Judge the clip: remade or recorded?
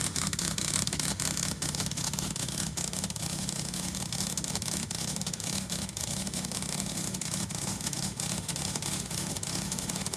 remade